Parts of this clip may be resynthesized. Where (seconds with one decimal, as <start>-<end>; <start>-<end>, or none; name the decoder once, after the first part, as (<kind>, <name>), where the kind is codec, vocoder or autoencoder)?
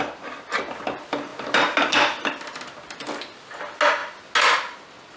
none